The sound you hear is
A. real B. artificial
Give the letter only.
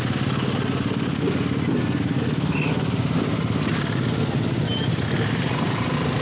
A